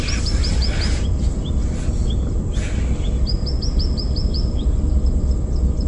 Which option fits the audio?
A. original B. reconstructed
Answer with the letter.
A